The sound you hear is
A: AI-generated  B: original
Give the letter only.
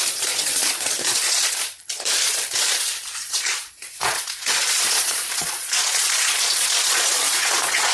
A